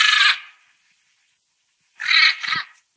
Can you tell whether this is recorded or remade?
recorded